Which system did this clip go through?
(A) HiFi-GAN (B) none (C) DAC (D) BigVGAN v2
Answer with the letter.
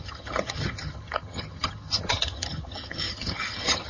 A